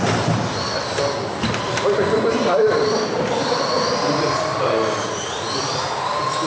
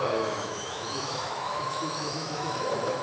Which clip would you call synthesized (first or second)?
second